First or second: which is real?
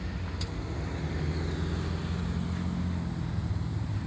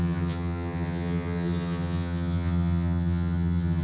first